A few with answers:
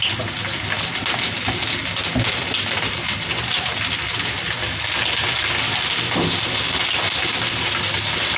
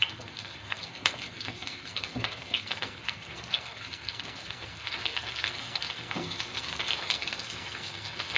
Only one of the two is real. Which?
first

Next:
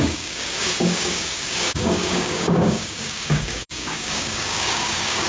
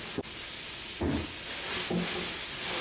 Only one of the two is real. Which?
second